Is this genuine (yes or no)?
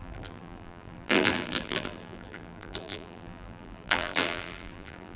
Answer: no